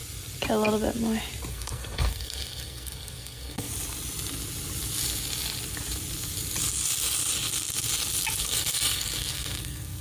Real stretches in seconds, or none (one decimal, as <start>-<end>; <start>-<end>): 0.0-1.5; 3.7-8.4